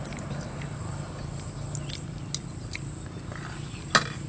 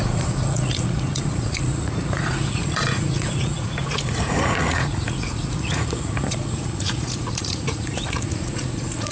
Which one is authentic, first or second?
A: first